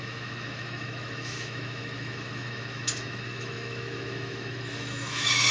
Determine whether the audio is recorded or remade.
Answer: remade